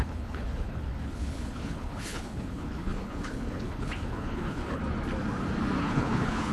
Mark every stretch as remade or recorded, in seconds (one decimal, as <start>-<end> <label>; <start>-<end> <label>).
0.0-4.8 remade; 4.8-5.8 recorded; 5.8-6.5 remade